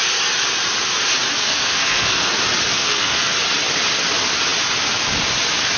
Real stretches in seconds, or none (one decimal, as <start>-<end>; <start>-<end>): 0.0-1.4; 2.3-2.7; 3.3-5.8